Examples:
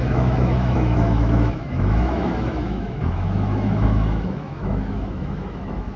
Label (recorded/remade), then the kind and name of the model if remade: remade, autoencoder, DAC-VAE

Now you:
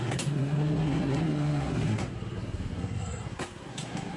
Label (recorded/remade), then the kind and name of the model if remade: remade, codec, SNAC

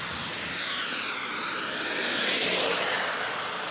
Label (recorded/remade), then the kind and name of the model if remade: recorded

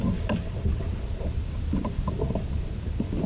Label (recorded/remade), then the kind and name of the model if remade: recorded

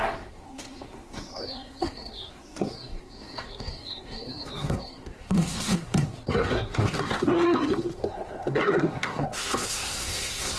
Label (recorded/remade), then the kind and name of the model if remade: remade, codec, SNAC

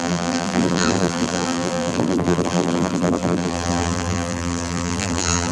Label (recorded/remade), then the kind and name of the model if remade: remade, vocoder, BigVGAN v2